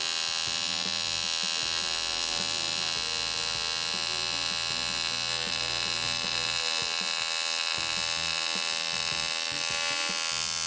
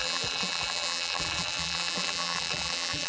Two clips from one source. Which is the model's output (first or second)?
second